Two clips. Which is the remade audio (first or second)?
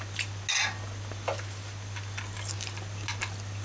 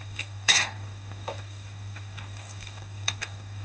second